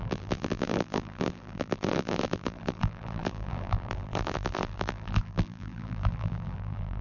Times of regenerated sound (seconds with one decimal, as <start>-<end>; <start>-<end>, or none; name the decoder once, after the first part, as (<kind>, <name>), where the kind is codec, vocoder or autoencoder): 0.0-7.0 (vocoder, BigVGAN v2)